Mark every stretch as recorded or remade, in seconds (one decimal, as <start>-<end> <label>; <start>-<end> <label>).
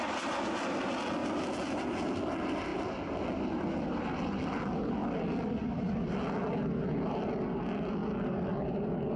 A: 0.0-1.2 recorded; 1.2-2.2 remade; 2.2-9.2 recorded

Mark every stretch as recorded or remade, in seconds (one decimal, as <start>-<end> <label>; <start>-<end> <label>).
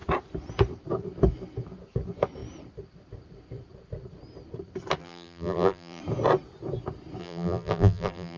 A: 0.0-5.0 recorded; 5.0-6.0 remade; 6.0-7.2 recorded; 7.2-8.4 remade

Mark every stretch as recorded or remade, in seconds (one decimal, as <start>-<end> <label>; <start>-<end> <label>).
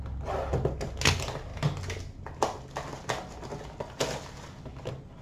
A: 0.0-5.2 recorded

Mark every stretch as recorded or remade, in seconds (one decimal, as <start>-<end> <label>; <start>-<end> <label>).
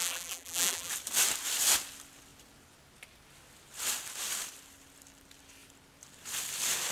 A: 0.0-0.9 remade; 0.9-6.9 recorded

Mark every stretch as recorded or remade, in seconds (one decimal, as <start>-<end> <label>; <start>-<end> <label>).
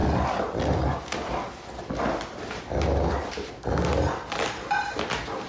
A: 0.0-5.5 recorded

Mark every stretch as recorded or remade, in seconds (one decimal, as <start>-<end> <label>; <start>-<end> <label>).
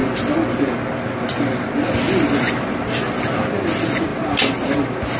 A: 0.0-5.2 recorded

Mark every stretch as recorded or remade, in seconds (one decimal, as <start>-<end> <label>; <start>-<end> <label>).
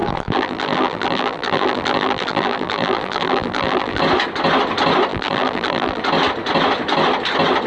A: 0.0-4.0 remade; 4.0-5.1 recorded; 5.1-6.0 remade; 6.0-7.7 recorded